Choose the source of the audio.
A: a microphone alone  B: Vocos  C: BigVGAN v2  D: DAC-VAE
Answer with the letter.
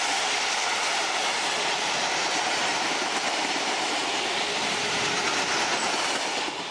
A